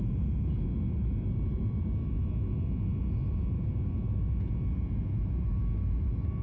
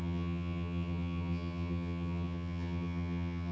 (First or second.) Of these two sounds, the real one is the first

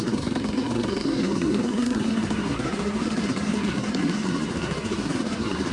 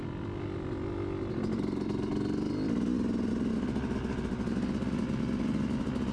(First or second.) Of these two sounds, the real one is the second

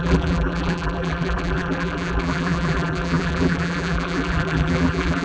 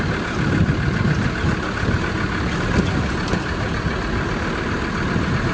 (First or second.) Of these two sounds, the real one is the second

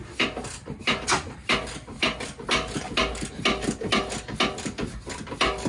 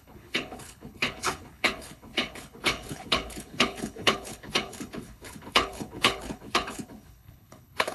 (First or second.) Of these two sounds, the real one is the first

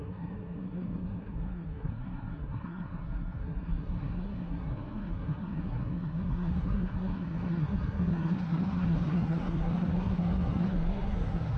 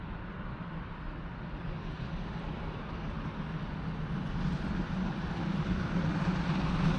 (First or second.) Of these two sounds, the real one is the second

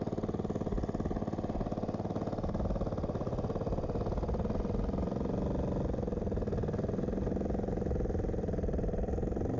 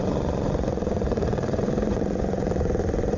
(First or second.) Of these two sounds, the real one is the first